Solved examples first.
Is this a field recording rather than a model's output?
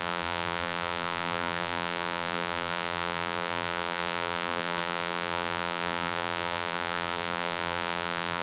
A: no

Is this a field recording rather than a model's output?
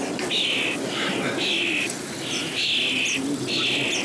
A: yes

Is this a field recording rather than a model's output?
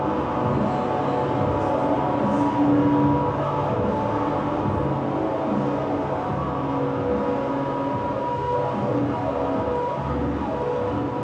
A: yes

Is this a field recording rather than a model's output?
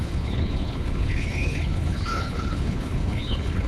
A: no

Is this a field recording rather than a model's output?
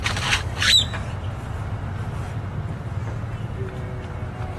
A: yes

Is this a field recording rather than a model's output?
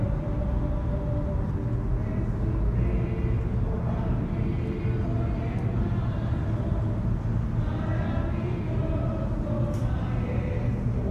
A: yes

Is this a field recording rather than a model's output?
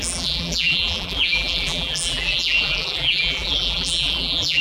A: no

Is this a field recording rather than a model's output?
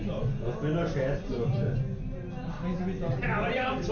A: yes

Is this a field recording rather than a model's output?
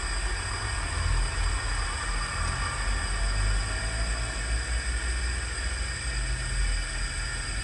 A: yes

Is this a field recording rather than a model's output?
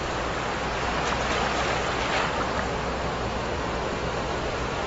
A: yes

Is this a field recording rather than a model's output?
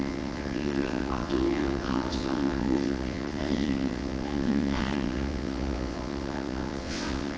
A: no